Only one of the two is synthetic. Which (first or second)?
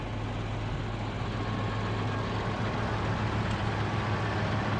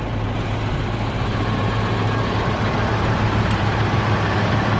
second